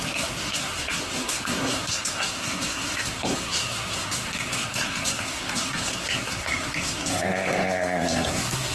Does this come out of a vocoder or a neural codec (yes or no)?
yes